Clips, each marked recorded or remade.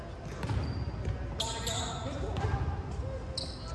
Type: recorded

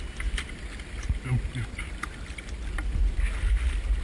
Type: recorded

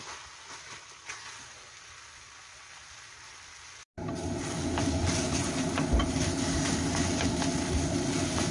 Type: recorded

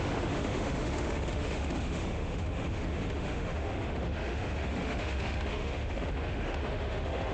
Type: remade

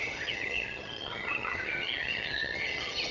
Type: remade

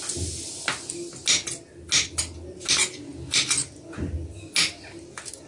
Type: recorded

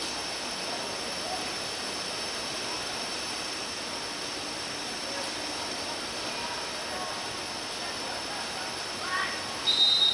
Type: recorded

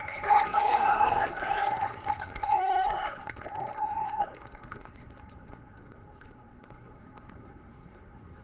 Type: remade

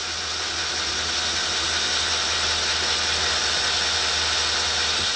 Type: recorded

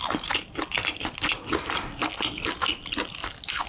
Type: recorded